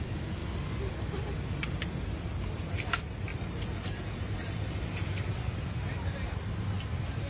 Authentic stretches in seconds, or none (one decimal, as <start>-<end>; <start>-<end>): 0.0-7.3